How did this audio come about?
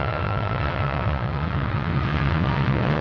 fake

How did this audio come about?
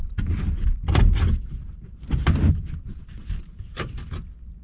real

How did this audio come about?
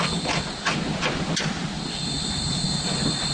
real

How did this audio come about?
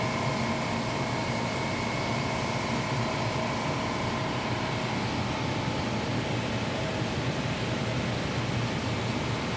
real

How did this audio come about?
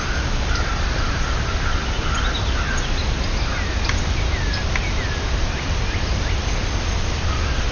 real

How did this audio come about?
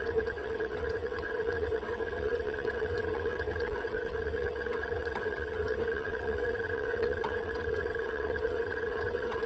fake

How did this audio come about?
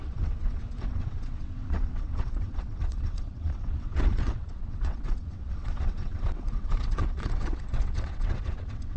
fake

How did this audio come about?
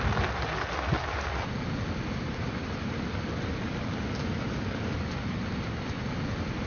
real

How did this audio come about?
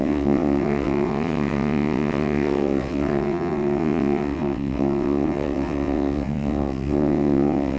fake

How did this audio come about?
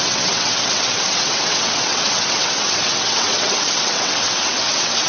fake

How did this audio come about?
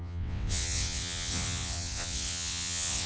fake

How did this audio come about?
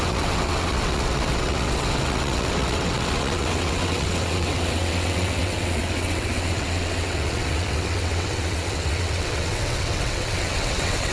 fake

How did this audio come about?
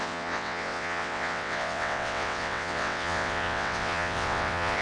fake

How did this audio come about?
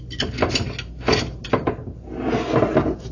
real